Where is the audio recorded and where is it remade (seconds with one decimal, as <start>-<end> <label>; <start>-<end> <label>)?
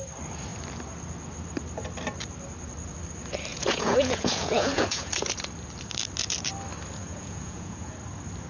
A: 0.0-3.5 recorded; 3.5-5.1 remade; 5.1-7.0 recorded; 7.0-7.9 remade; 7.9-8.5 recorded